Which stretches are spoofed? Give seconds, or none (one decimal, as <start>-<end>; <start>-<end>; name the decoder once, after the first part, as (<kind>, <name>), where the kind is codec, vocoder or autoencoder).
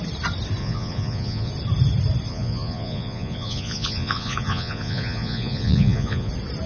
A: 0.6-1.5 (vocoder, Vocos); 2.3-6.3